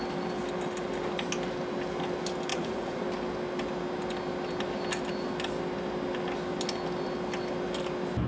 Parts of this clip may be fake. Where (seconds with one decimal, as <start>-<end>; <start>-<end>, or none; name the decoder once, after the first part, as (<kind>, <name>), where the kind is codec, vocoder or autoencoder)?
2.5-3.0 (vocoder, Vocos)

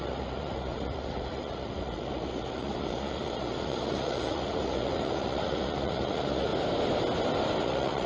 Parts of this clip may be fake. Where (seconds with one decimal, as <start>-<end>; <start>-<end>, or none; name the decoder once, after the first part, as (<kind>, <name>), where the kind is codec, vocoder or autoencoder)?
0.0-6.5 (vocoder, Vocos); 7.6-8.1

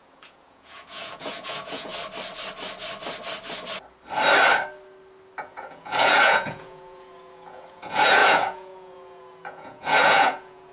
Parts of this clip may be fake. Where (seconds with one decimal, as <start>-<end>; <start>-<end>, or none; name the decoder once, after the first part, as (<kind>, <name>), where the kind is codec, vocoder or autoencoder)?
0.0-1.9 (vocoder, Vocos); 5.4-10.7